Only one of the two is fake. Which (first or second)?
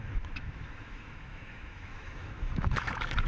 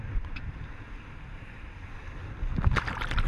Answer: first